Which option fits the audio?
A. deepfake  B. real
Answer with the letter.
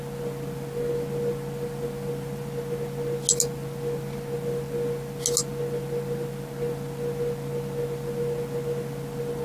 B